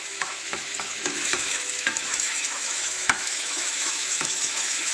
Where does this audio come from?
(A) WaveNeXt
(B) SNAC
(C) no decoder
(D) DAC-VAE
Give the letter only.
D